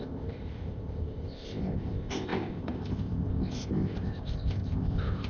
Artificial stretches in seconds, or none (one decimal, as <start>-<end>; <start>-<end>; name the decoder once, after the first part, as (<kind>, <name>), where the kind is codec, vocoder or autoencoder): 0.0-5.3 (codec, ZipCodec)